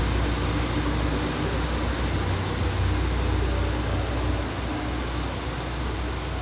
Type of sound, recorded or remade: recorded